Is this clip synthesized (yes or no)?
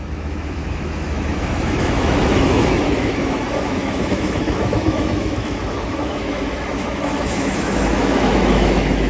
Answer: yes